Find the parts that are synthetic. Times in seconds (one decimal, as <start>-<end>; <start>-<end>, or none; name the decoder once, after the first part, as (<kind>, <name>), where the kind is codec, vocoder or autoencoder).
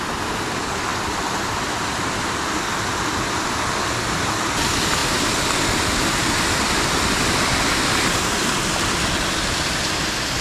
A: 5.0-5.6 (vocoder, BigVGAN v2); 6.2-8.3